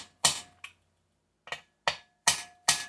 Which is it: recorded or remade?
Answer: recorded